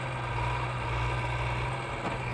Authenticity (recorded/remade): recorded